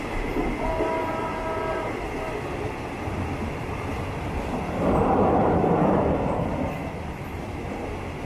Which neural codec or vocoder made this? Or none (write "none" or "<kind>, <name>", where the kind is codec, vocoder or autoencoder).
none